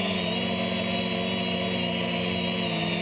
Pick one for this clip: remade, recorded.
recorded